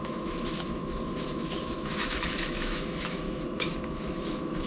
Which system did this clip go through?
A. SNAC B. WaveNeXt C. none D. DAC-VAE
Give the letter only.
D